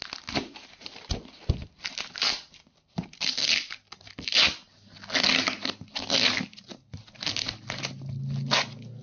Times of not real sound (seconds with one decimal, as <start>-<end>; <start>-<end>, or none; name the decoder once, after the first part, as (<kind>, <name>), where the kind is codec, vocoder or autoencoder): 0.4-1.2 (vocoder, BigVGAN v2)